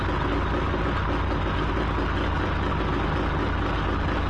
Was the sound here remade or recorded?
recorded